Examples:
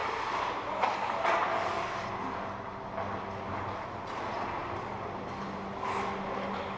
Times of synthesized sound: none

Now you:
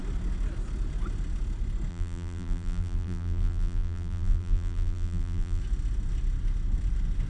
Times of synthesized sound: 1.9-5.6 (vocoder, BigVGAN v2)

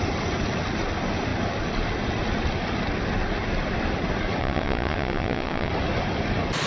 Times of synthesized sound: 4.4-5.7 (vocoder, WaveNeXt)

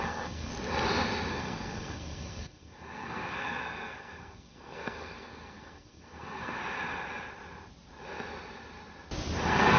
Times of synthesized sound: 0.0-0.5 (codec, SNAC); 1.3-6.6; 9.4-9.8

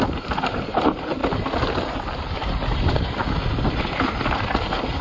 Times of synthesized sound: none